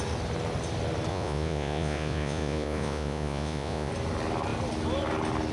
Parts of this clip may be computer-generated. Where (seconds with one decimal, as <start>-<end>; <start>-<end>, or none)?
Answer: 1.1-3.9